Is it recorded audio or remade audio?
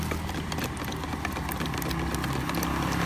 recorded